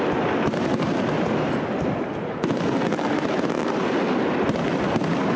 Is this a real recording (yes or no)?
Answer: yes